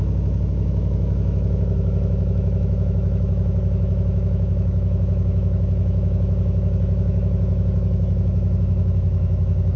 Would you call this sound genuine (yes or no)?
no